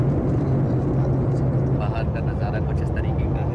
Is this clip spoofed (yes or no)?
no